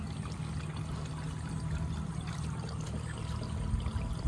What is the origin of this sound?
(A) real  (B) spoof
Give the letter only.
A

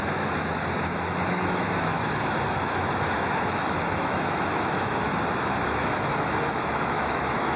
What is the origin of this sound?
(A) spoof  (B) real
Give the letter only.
A